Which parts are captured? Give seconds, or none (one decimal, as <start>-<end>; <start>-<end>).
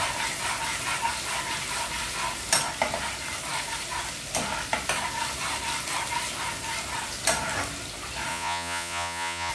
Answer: 0.0-8.3